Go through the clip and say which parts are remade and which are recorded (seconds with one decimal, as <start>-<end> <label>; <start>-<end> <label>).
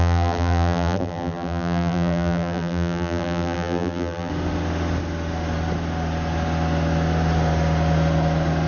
0.0-4.3 remade; 4.3-8.7 recorded